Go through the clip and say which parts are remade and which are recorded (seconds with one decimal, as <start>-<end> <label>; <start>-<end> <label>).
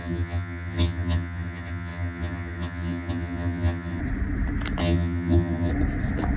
0.0-4.0 remade; 4.0-4.8 recorded; 4.8-5.7 remade; 5.7-6.4 recorded